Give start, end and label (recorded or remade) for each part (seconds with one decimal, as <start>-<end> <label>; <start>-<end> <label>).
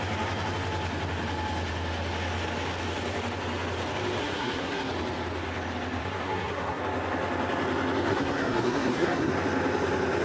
0.0-4.2 recorded; 4.2-4.9 remade; 4.9-6.0 recorded; 6.0-6.8 remade; 6.8-8.1 recorded; 8.1-9.3 remade; 9.3-10.2 recorded